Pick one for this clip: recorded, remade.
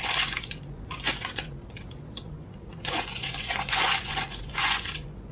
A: remade